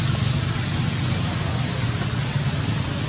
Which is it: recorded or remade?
recorded